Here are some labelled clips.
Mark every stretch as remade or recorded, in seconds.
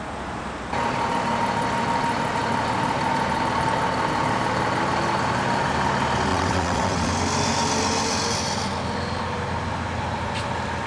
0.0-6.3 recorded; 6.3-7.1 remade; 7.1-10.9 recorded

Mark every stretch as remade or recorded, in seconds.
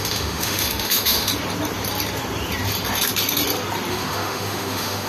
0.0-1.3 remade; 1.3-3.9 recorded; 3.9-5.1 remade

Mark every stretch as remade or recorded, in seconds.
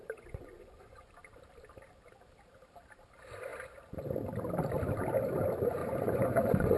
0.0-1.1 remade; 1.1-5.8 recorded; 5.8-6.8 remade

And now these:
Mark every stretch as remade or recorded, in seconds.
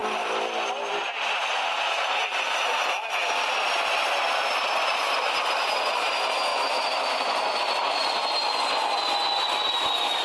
0.0-0.9 remade; 0.9-3.2 recorded; 3.2-4.0 remade; 4.0-6.5 recorded; 6.5-7.4 remade; 7.4-10.2 recorded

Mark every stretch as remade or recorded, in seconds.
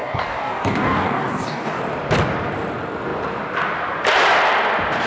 0.0-1.8 remade; 1.8-5.1 recorded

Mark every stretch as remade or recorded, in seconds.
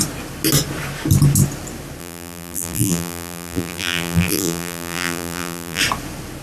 0.0-2.0 recorded; 2.0-5.8 remade; 5.8-6.4 recorded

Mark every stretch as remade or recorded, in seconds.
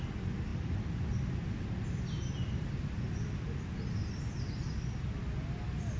0.0-6.0 recorded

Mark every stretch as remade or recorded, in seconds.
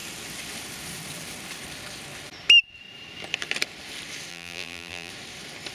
0.0-4.3 recorded; 4.3-5.1 remade; 5.1-5.7 recorded